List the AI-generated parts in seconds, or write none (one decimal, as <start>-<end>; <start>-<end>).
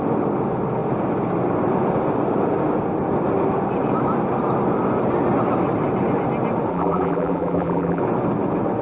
6.7-8.0